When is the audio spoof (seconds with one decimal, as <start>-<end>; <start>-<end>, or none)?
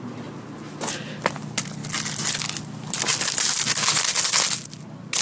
none